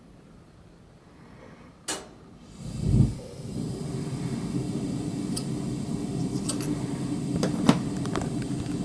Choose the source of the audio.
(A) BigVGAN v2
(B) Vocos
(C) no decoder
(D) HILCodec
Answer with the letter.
C